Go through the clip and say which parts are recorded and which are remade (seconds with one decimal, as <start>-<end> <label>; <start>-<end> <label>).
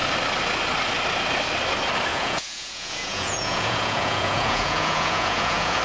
0.0-2.1 recorded; 2.1-5.8 remade